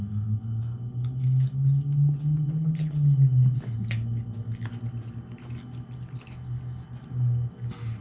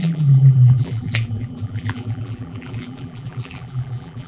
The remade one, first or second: second